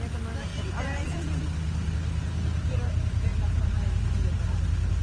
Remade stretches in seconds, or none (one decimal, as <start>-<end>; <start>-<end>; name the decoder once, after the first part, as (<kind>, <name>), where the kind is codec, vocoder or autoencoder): 0.5-1.4 (vocoder, Vocos)